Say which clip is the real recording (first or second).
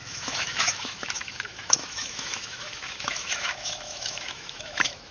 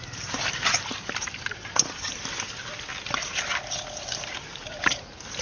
second